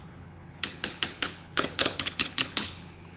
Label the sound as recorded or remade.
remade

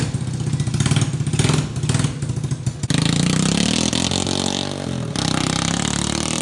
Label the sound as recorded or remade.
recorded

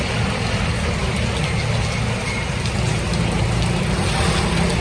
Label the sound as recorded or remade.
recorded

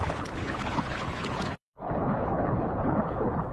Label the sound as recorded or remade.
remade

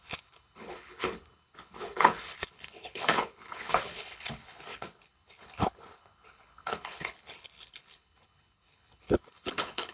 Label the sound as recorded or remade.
remade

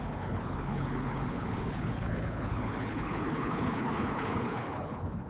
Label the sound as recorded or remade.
remade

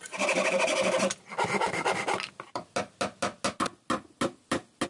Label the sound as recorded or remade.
recorded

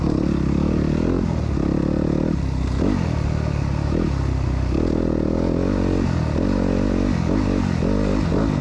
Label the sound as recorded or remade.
recorded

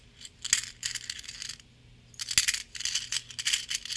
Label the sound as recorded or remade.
recorded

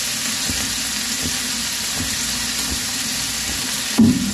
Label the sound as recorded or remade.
recorded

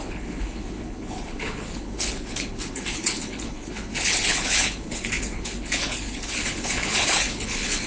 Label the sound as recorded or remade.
remade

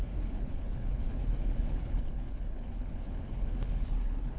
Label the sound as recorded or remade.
remade